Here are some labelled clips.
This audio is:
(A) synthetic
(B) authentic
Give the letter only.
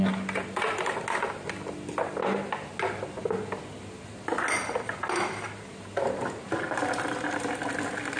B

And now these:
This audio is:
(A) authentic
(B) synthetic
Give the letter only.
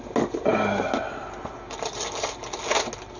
A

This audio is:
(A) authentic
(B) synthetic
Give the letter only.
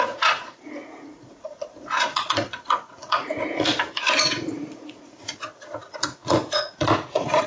B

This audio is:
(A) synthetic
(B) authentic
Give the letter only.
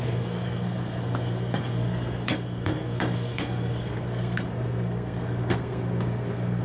A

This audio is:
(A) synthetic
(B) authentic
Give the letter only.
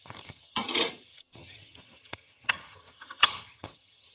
A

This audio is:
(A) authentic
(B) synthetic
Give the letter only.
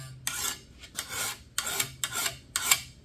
A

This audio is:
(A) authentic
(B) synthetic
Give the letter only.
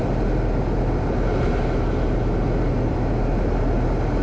A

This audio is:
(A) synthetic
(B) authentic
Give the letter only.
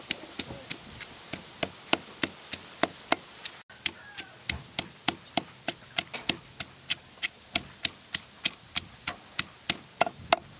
B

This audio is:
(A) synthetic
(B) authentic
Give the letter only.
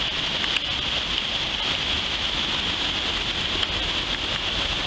B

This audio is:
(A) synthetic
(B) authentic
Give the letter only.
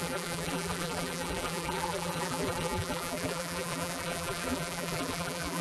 A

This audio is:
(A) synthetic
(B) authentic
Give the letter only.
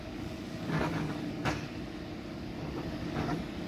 A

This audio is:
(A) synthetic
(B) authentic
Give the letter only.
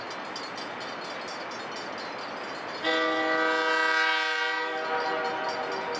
B